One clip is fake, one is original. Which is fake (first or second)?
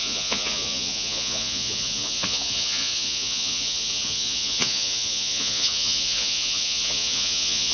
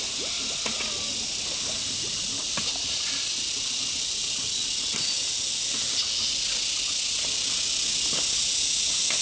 first